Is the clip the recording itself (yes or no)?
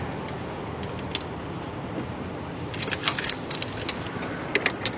yes